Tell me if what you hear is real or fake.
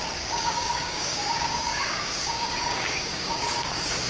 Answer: fake